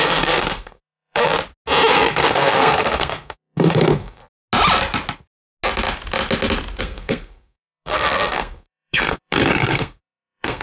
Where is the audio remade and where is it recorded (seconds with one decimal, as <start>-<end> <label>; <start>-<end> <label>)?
0.0-1.3 remade; 1.3-1.9 recorded; 1.9-4.2 remade; 4.2-6.8 recorded; 6.8-10.6 remade